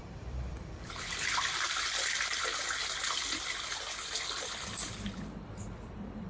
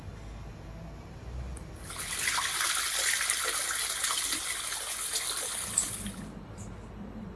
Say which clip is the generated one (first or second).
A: first